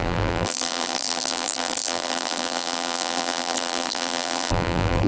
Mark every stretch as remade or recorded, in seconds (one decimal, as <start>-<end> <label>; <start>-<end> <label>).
0.0-5.1 remade